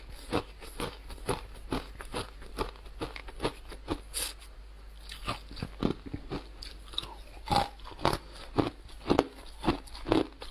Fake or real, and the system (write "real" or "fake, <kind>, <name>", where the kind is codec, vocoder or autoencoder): real